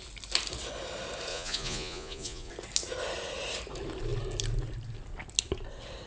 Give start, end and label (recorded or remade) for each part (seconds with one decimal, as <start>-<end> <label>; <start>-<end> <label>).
0.0-1.3 recorded; 1.3-2.5 remade; 2.5-6.1 recorded